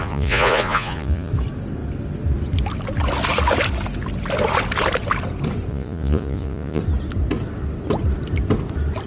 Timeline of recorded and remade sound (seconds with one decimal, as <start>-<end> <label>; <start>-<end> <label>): 0.0-1.3 remade; 1.3-5.7 recorded; 5.7-6.8 remade; 6.8-9.1 recorded